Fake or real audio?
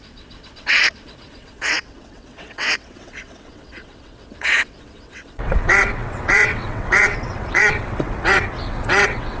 fake